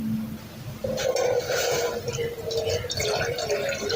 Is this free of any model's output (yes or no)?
no